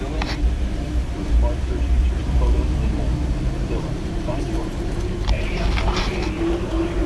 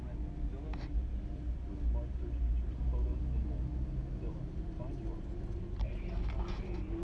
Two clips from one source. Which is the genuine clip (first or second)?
second